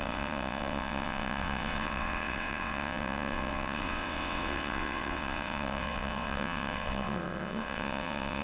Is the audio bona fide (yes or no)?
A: no